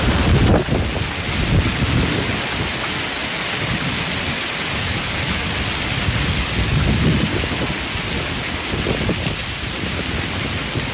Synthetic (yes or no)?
no